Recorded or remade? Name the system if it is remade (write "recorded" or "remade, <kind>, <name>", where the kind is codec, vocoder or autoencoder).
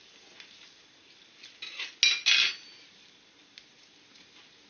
recorded